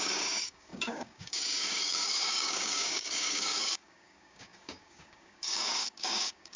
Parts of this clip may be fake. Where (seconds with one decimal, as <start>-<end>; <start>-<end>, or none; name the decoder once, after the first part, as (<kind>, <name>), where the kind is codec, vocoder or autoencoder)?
0.0-6.6 (codec, DAC)